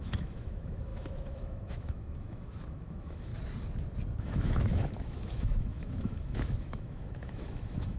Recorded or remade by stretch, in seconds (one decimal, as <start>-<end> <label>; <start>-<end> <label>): 0.0-3.3 remade; 3.3-4.2 recorded; 4.2-8.0 remade